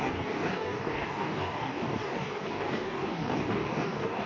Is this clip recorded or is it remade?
remade